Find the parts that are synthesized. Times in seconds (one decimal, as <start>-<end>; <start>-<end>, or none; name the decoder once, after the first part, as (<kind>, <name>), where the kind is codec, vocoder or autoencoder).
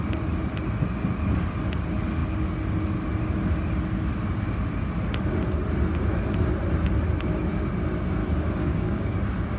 8.2-9.2 (codec, DAC)